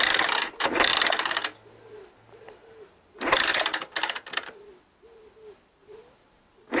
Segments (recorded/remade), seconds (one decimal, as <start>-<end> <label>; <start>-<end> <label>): 0.0-6.8 recorded

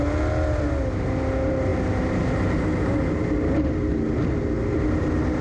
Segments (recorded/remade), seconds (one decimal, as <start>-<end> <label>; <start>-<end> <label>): 0.0-5.4 recorded

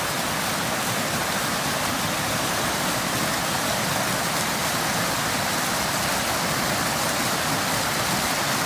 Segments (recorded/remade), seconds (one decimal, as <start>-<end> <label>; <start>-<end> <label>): 0.0-8.7 recorded

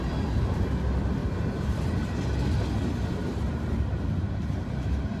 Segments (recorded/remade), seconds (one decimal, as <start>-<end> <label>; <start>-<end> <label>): 0.0-1.2 recorded; 1.2-1.9 remade; 1.9-3.2 recorded; 3.2-4.8 remade; 4.8-5.2 recorded

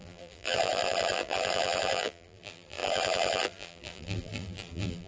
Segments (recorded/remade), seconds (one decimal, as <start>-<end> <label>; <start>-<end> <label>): 0.0-5.1 remade

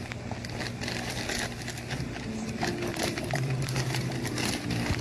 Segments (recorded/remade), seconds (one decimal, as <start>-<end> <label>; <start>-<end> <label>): 0.0-2.9 recorded; 2.9-4.0 remade; 4.0-5.0 recorded

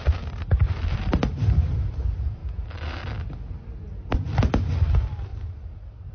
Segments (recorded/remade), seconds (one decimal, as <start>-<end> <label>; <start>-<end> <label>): 0.0-2.4 remade; 2.4-4.4 recorded; 4.4-6.1 remade